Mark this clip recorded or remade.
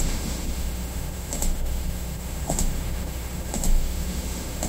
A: remade